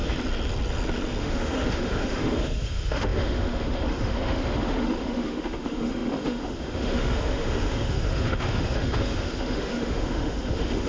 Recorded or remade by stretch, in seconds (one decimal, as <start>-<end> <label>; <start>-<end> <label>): 0.0-1.2 recorded; 1.2-10.9 remade